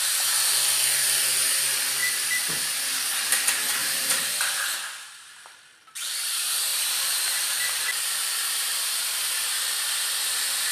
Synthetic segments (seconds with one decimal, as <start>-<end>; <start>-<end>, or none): 2.0-2.5; 3.8-4.6; 6.7-8.8